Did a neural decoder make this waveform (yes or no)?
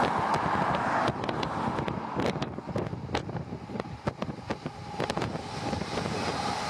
no